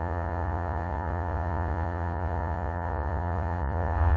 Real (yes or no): no